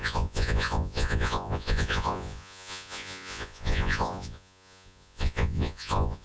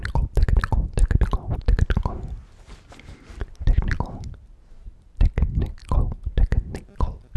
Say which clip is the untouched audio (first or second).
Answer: second